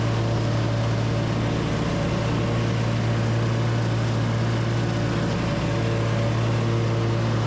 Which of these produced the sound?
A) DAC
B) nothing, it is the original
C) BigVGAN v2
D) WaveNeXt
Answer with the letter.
B